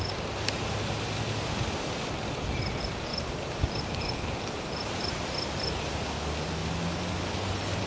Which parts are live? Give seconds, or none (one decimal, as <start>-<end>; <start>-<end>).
0.0-3.1; 5.2-7.9